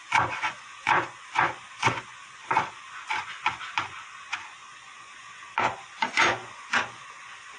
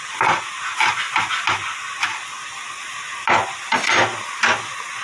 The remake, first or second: first